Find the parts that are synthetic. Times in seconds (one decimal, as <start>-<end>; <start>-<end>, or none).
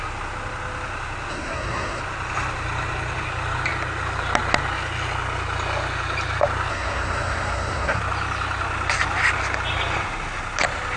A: 1.3-2.0; 6.7-8.0